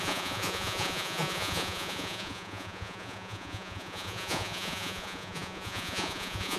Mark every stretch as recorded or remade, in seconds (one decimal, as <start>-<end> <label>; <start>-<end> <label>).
0.0-6.6 remade